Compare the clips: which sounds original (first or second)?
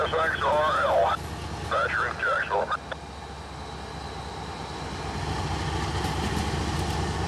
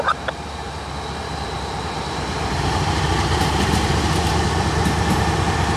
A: first